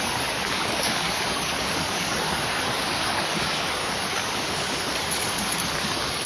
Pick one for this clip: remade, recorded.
remade